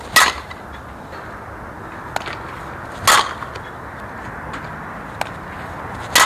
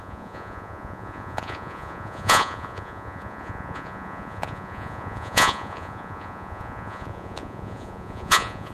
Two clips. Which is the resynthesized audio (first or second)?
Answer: second